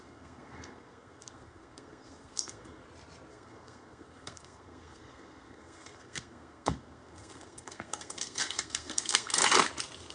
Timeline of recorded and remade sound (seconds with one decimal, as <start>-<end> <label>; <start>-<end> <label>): 0.0-2.8 remade; 2.8-3.3 recorded; 3.3-9.4 remade; 9.4-10.1 recorded